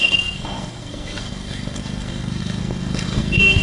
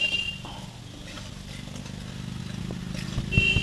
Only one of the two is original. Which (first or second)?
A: second